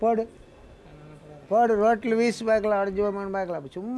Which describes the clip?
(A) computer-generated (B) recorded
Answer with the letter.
B